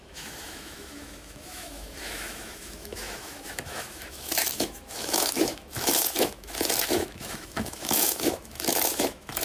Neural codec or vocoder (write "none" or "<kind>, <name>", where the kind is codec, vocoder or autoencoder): autoencoder, DAC-VAE